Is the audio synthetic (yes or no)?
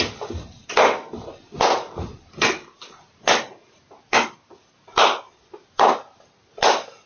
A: no